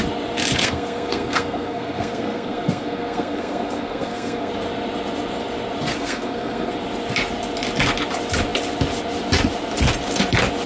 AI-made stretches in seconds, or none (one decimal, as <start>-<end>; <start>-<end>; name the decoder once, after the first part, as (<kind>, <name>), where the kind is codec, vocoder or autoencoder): 0.6-4.5 (codec, SNAC); 5.9-6.7